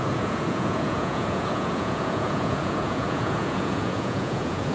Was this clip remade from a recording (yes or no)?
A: yes